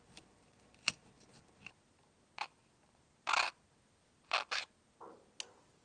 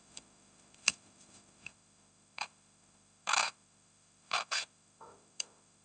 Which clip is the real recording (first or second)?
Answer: first